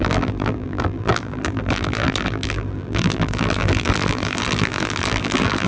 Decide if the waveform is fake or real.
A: fake